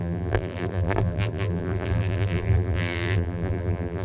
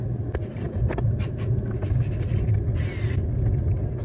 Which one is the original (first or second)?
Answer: second